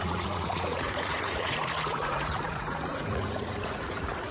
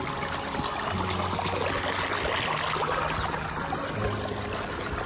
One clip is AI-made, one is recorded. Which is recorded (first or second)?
second